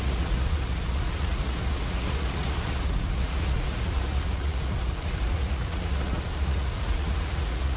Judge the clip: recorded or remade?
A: remade